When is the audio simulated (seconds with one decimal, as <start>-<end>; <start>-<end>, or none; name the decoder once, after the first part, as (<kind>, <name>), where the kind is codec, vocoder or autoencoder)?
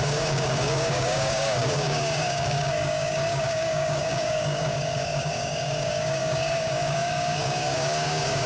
0.0-8.5 (codec, DAC)